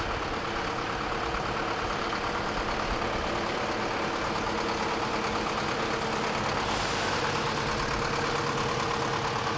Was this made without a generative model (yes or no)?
yes